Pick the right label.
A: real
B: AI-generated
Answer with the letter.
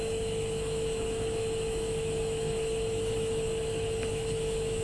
B